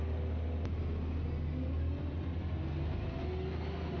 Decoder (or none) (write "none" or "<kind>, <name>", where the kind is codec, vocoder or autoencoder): none